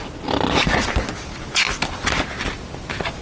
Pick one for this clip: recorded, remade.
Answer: recorded